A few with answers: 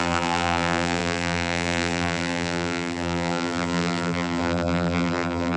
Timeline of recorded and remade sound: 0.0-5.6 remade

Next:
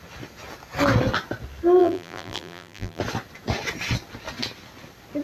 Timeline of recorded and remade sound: 0.0-1.8 recorded; 1.8-3.0 remade; 3.0-5.2 recorded